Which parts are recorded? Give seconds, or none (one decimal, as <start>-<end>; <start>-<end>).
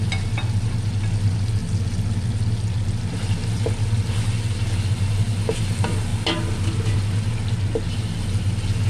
0.0-8.9